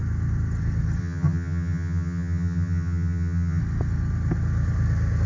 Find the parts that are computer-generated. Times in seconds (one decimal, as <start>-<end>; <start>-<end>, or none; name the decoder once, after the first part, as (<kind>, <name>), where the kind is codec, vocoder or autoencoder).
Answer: 1.0-3.6 (vocoder, HiFi-GAN)